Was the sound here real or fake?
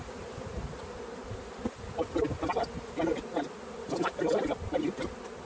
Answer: real